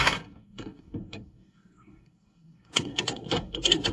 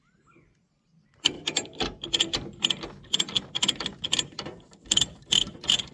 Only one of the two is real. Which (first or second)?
second